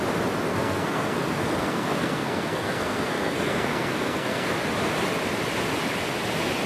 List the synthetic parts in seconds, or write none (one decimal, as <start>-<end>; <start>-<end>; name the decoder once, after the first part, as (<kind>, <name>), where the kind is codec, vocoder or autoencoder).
0.5-4.5 (codec, SNAC)